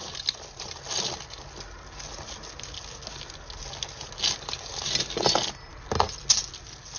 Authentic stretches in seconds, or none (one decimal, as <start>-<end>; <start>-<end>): 0.0-7.0